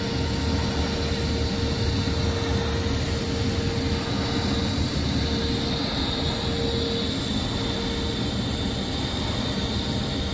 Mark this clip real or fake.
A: real